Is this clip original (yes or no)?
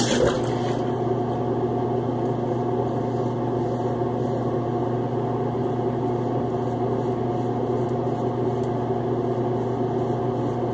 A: yes